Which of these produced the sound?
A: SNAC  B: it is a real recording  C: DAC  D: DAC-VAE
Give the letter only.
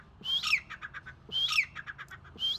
B